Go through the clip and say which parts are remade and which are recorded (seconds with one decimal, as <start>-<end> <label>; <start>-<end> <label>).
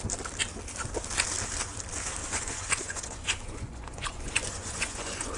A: 0.0-2.2 recorded; 2.2-5.4 remade